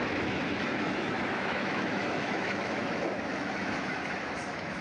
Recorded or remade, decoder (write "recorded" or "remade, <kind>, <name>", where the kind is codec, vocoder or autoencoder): remade, autoencoder, DAC-VAE